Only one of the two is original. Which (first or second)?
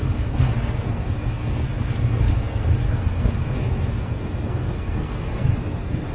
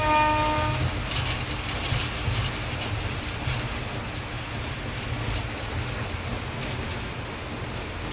second